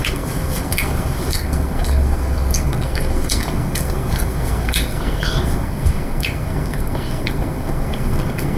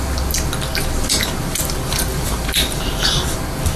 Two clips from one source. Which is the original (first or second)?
second